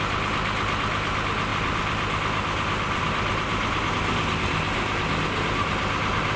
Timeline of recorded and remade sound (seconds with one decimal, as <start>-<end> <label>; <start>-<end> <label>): 0.0-1.5 recorded; 1.5-3.9 remade; 3.9-6.4 recorded